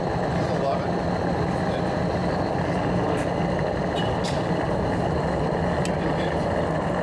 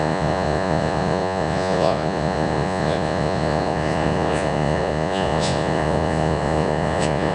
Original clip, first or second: first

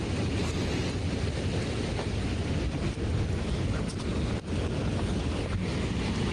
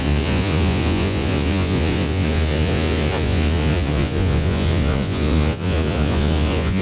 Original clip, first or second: first